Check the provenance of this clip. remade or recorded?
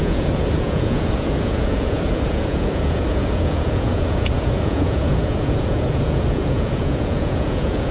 remade